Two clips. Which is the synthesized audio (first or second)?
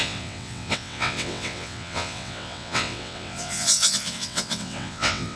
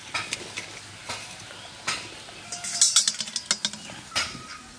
first